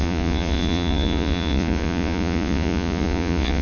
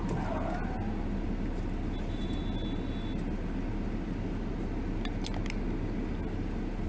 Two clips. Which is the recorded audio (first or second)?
second